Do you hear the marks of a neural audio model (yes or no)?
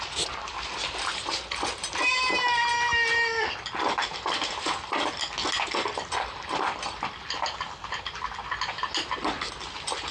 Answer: no